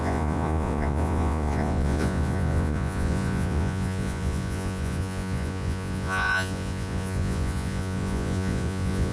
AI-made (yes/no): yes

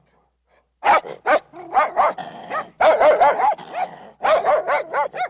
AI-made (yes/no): no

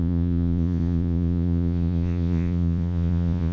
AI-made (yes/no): yes